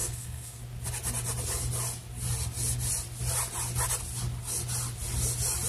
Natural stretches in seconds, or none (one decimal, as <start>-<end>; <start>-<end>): 0.6-5.7